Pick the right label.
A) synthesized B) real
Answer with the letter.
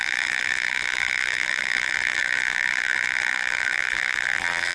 A